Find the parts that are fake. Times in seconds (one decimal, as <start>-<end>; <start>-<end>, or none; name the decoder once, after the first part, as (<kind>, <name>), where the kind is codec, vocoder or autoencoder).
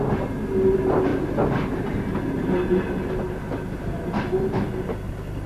none